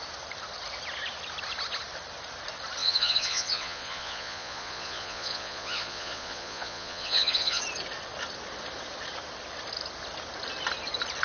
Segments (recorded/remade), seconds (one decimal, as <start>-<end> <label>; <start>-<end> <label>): 0.0-2.8 recorded; 2.8-7.6 remade; 7.6-11.2 recorded